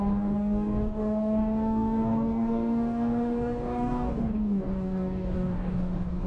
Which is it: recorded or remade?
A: remade